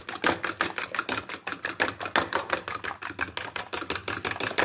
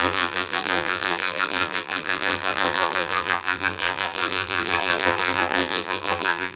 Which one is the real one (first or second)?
first